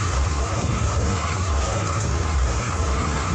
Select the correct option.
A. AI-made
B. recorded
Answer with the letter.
A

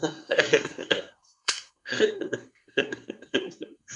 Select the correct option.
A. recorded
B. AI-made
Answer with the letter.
B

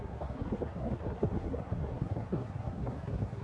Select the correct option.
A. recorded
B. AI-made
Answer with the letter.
B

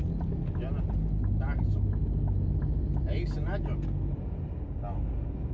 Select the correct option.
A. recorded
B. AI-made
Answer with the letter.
A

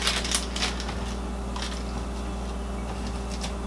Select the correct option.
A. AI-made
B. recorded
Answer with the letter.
B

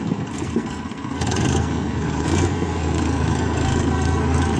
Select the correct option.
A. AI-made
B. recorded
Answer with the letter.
A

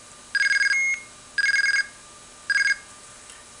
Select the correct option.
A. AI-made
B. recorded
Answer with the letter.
B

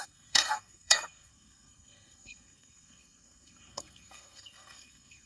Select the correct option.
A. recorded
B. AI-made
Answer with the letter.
B